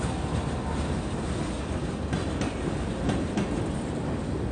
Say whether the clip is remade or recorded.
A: recorded